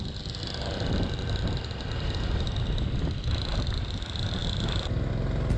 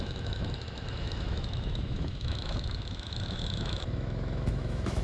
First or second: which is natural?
first